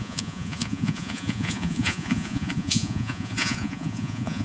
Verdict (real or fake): fake